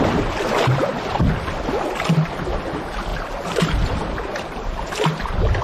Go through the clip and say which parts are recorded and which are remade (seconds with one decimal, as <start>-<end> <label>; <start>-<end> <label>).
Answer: 0.0-3.1 recorded; 3.1-4.9 remade; 4.9-5.6 recorded